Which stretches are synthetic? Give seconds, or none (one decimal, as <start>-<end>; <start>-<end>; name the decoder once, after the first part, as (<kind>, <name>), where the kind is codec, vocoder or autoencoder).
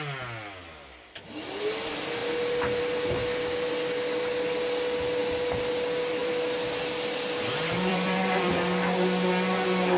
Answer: 3.2-3.7 (vocoder, BigVGAN v2); 5.2-5.7; 6.2-8.5